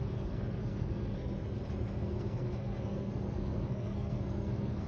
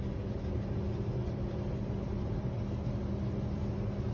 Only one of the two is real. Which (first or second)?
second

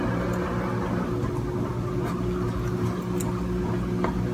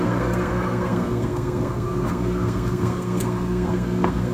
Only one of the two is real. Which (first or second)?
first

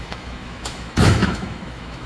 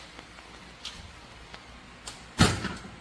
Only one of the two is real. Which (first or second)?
second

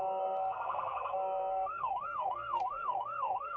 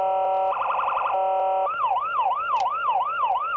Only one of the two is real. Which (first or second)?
second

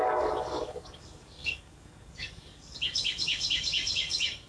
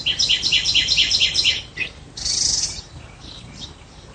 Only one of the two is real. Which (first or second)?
second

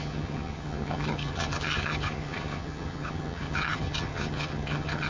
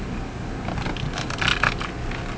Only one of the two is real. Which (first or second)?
second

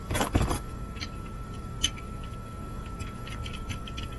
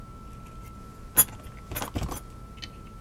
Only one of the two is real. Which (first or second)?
second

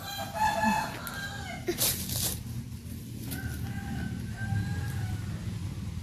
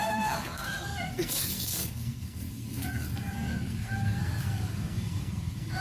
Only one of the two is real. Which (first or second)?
first